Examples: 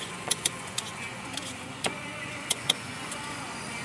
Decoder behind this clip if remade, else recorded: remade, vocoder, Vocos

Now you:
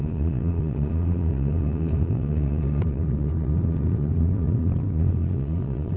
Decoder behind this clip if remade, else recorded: remade, vocoder, Vocos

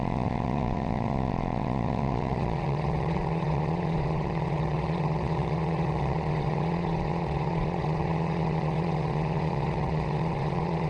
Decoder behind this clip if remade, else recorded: remade, vocoder, Vocos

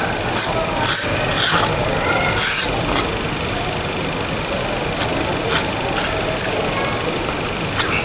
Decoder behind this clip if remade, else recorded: recorded